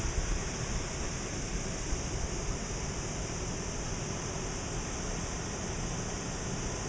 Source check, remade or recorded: recorded